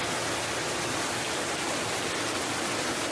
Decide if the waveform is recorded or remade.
recorded